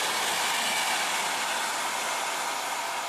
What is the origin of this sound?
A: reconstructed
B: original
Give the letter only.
B